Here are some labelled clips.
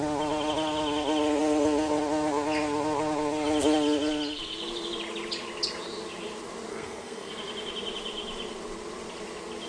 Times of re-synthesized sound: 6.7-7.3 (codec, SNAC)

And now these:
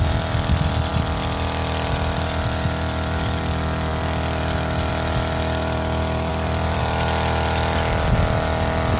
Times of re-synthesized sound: 6.3-6.8 (vocoder, BigVGAN v2)